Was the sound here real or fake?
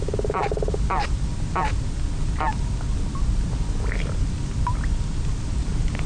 real